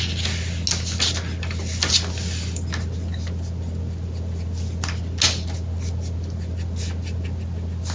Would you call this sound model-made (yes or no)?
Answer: no